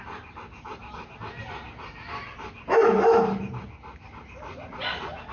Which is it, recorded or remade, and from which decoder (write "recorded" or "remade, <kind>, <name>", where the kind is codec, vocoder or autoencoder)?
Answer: recorded